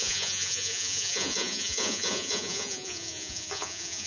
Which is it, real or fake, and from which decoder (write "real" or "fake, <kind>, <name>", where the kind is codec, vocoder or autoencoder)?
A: fake, vocoder, Vocos